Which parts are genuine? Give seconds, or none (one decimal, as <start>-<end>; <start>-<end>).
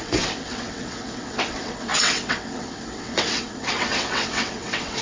none